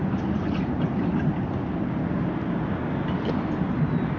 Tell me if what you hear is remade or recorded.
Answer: recorded